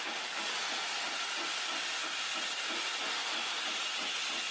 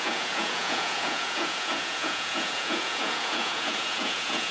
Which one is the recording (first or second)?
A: first